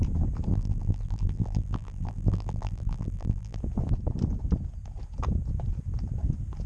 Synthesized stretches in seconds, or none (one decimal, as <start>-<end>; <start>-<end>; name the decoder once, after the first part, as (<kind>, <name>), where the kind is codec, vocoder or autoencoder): 0.5-3.6 (vocoder, BigVGAN v2)